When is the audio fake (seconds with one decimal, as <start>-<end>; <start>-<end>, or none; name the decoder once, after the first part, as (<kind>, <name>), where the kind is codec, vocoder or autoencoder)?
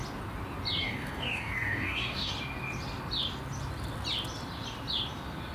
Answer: 0.8-2.3 (codec, DAC)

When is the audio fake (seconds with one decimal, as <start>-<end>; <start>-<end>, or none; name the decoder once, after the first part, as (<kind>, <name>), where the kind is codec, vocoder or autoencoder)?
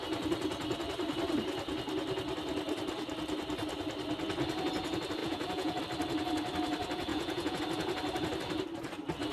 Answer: 5.2-5.8 (vocoder, Vocos); 7.1-7.6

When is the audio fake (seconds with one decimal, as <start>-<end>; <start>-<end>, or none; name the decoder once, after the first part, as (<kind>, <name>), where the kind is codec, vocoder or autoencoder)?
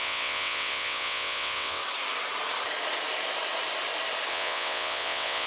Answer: 0.0-1.8 (vocoder, WaveNeXt); 4.3-5.5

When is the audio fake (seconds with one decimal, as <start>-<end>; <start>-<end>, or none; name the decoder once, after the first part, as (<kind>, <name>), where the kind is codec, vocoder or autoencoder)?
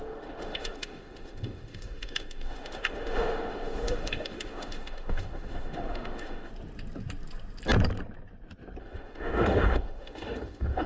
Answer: 0.0-6.5 (autoencoder, DAC-VAE); 8.8-10.9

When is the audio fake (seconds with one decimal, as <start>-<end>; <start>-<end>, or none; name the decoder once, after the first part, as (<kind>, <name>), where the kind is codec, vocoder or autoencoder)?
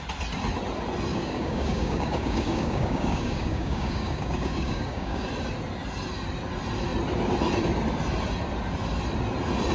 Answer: 1.1-5.3 (codec, DAC)